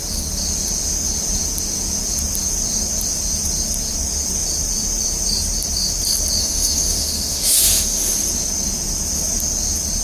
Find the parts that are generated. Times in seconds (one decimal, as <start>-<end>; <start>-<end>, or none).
6.4-8.1